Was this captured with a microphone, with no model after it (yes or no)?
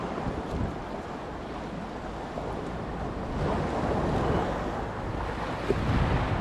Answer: yes